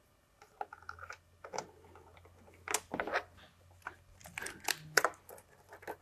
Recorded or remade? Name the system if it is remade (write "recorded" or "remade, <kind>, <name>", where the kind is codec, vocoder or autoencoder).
recorded